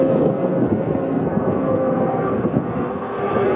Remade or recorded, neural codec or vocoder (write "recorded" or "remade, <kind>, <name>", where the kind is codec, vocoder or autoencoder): remade, codec, SNAC